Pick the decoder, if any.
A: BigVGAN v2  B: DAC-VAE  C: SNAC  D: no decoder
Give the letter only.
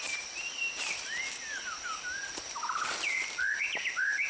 D